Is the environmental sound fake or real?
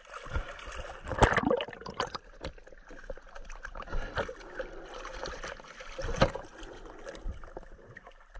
real